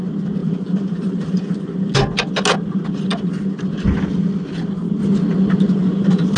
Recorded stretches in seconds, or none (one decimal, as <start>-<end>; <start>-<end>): 0.0-0.4; 1.9-6.4